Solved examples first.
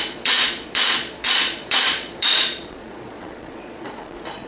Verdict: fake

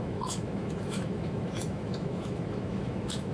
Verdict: fake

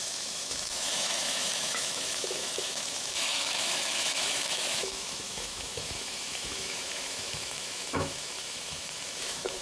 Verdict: fake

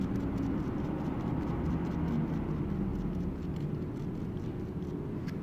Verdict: real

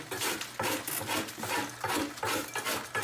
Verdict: real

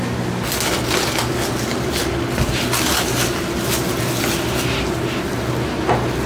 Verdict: real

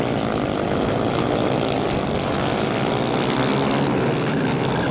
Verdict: real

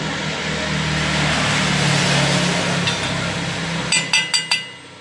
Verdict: real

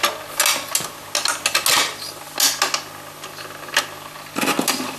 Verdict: real